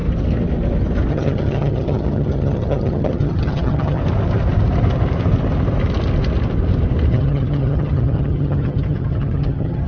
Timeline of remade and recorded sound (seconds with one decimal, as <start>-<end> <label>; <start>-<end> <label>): 0.0-1.1 recorded; 1.1-4.0 remade; 4.0-7.1 recorded; 7.1-9.9 remade